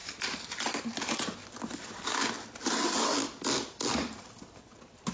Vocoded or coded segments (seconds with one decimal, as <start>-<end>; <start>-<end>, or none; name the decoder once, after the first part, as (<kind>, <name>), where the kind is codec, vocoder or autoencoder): none